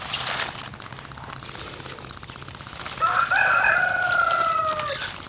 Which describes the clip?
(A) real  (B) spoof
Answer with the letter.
A